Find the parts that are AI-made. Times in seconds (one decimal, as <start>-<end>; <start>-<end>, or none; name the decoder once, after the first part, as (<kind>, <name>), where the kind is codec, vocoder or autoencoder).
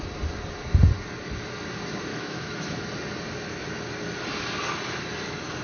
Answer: 2.1-2.8 (autoencoder, DAC-VAE)